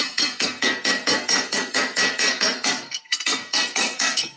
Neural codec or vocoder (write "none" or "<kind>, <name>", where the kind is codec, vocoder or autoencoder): codec, SNAC